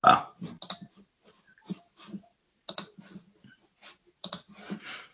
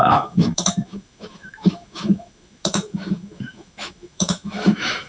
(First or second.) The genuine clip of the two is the first